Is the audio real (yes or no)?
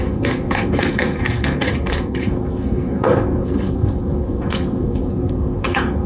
no